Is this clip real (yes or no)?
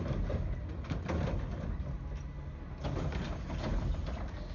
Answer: yes